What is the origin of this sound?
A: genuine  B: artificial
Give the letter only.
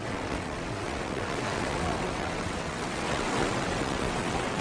B